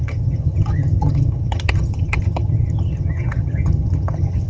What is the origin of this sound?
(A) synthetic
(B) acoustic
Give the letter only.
A